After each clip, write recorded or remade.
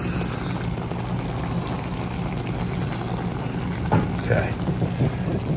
recorded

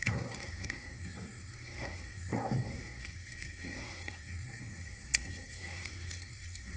remade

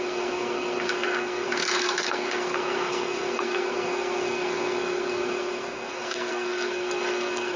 remade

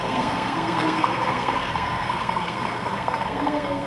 remade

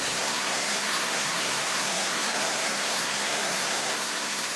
remade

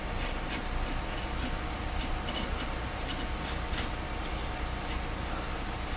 recorded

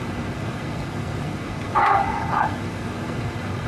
remade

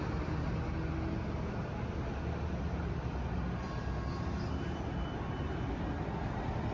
recorded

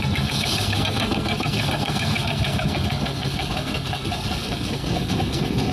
remade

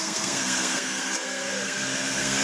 remade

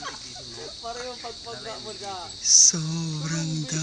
recorded